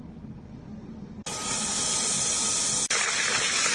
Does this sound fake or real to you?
real